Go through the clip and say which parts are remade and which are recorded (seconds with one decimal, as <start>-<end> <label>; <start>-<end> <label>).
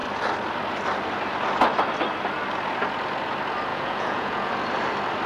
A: 0.0-3.7 recorded; 3.7-4.5 remade; 4.5-5.3 recorded